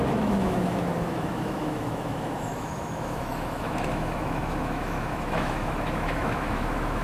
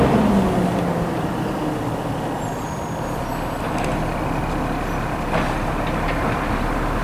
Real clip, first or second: second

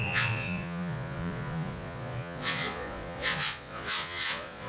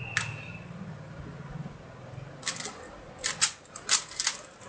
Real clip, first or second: second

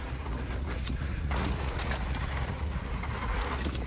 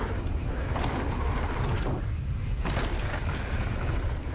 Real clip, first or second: second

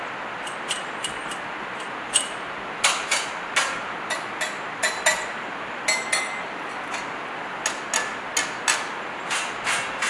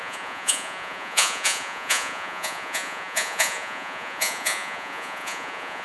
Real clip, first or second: first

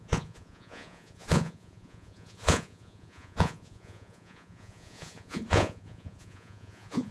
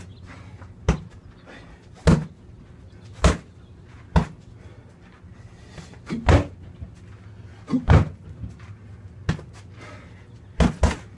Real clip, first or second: second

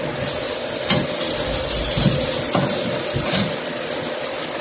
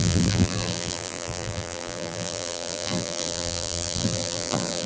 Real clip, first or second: first